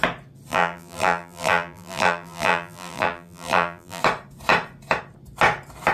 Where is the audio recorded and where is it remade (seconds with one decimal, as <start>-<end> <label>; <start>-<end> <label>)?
0.0-0.5 recorded; 0.5-4.0 remade; 4.0-5.9 recorded